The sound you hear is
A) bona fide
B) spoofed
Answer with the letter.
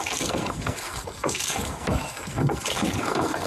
B